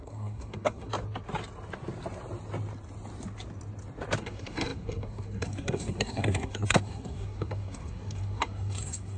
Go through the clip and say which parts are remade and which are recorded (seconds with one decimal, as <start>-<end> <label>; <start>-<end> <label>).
0.0-0.9 remade; 0.9-4.2 recorded; 4.2-9.2 remade